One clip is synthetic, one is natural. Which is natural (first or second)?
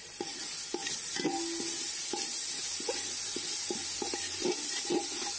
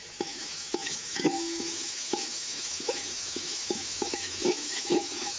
first